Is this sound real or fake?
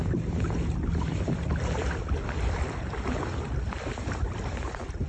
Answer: real